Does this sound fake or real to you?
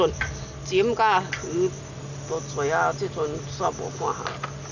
real